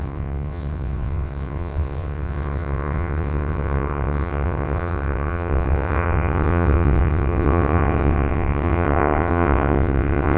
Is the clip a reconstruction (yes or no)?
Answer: yes